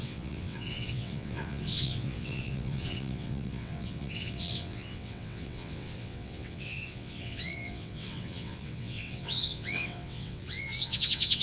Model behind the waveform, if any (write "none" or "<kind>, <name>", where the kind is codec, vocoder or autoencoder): vocoder, WaveNeXt